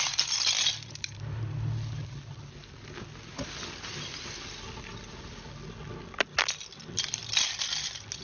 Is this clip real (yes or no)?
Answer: yes